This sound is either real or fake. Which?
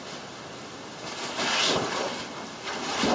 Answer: real